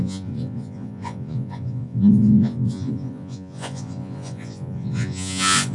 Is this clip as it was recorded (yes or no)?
no